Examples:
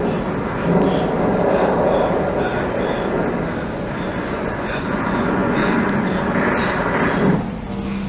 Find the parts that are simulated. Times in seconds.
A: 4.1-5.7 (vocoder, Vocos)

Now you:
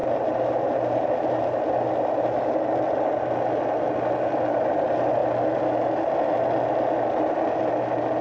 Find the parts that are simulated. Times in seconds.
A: 0.0-1.4 (vocoder, BigVGAN v2)

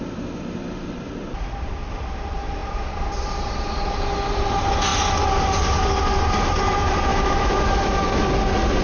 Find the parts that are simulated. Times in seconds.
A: 7.1-8.2 (autoencoder, DAC-VAE)

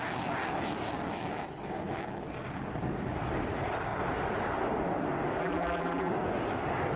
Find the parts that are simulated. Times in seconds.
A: 5.4-6.1 (vocoder, BigVGAN v2)

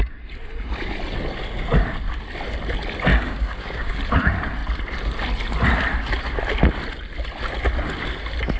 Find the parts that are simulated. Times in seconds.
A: 3.1-4.0 (codec, DAC)